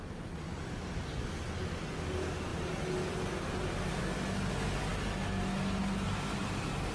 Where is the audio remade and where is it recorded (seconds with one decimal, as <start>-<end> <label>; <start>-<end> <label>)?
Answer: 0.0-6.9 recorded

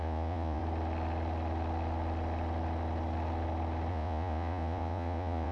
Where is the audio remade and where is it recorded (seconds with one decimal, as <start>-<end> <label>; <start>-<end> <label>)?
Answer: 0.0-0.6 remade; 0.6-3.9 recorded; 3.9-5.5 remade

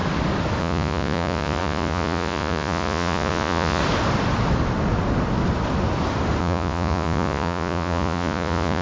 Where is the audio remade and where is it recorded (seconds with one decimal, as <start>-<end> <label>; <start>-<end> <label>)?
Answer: 0.0-0.6 recorded; 0.6-3.8 remade; 3.8-6.4 recorded; 6.4-8.8 remade